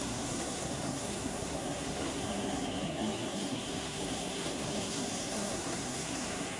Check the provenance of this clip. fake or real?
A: fake